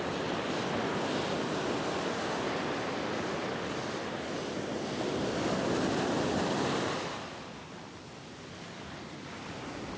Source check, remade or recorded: recorded